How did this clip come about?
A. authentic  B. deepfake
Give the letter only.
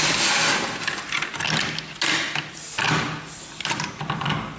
A